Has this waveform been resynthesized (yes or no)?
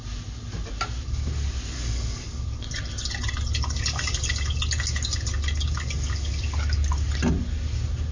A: no